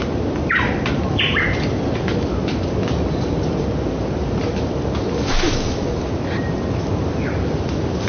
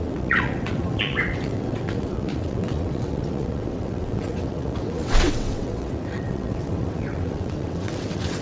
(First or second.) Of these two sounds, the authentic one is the first